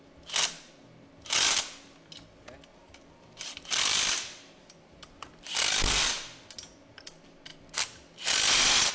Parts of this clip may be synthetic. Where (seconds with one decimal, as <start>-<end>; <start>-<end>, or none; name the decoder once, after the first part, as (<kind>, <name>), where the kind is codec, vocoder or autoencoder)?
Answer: 2.7-6.1 (vocoder, BigVGAN v2)